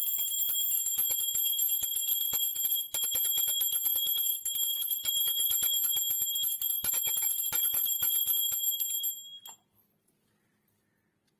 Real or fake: real